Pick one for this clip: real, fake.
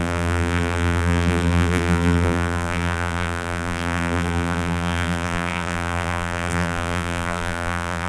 fake